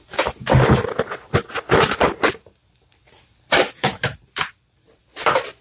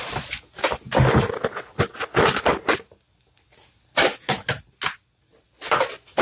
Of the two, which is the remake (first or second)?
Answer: first